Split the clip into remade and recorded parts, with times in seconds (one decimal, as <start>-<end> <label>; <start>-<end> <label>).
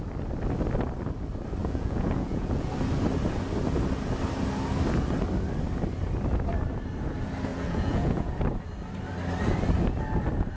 0.0-1.6 recorded; 1.6-2.7 remade; 2.7-7.5 recorded; 7.5-8.3 remade; 8.3-10.6 recorded